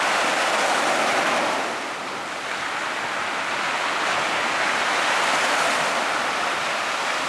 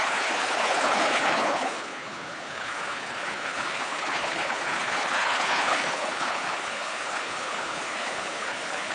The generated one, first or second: second